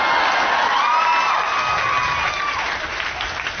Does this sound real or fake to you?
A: real